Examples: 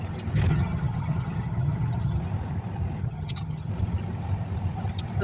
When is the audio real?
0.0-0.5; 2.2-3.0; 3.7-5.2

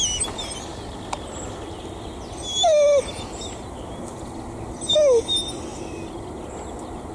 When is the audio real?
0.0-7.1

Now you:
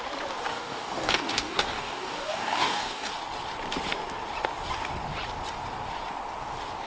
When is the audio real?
0.0-0.5; 3.1-6.9

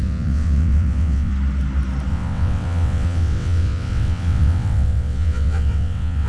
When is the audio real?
1.3-2.1